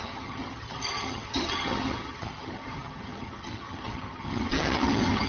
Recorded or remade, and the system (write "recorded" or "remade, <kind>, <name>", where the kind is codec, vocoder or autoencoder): remade, vocoder, HiFi-GAN